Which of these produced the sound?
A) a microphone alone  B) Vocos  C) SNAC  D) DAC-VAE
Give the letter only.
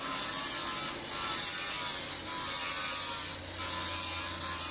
A